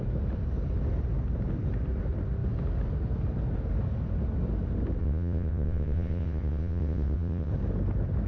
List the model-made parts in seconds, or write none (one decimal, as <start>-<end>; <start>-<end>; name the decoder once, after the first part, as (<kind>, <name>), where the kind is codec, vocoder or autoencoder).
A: 5.0-7.5 (vocoder, WaveNeXt)